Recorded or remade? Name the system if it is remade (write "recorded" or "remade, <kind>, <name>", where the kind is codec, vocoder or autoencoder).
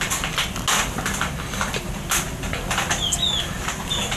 recorded